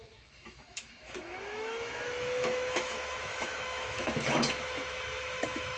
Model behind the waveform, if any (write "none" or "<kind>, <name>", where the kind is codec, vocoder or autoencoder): autoencoder, DAC-VAE